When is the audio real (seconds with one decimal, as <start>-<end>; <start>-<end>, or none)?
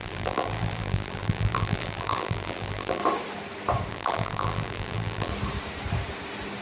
3.0-3.9; 5.3-6.6